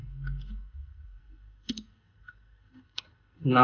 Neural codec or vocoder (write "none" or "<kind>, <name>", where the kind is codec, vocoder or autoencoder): codec, SNAC